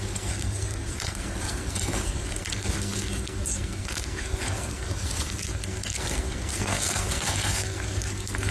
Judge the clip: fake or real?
fake